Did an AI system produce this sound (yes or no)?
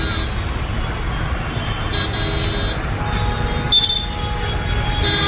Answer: no